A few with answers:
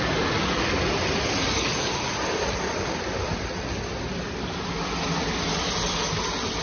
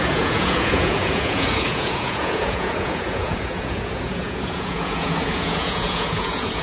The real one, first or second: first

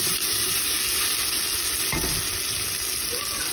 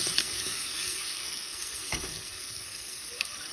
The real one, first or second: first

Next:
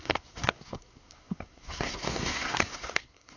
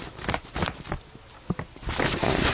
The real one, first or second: second